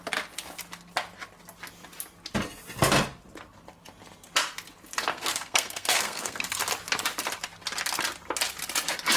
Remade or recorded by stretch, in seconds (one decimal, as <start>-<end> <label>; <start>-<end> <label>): 0.0-5.1 recorded; 5.1-6.6 remade; 6.6-9.2 recorded

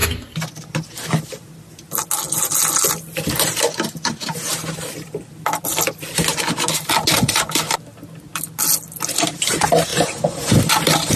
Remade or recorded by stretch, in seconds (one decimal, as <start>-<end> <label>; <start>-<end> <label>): 0.0-11.2 recorded

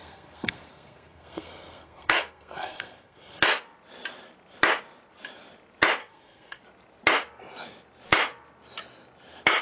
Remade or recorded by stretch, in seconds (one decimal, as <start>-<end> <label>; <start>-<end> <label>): 0.0-3.4 remade; 3.4-6.0 recorded; 6.0-6.6 remade; 6.6-9.6 recorded

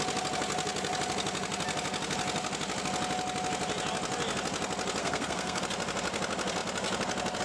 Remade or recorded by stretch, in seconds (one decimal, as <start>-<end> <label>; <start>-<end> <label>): 0.0-5.0 recorded; 5.0-5.6 remade; 5.6-7.4 recorded

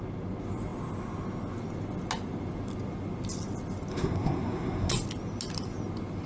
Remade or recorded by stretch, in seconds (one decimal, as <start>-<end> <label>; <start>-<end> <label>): 0.0-3.9 recorded; 3.9-4.9 remade; 4.9-6.3 recorded

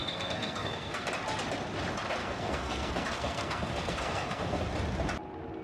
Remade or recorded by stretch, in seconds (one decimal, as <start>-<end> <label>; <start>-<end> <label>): 0.0-1.1 remade; 1.1-2.2 recorded; 2.2-4.6 remade; 4.6-5.6 recorded